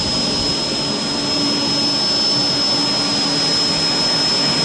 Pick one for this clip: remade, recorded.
recorded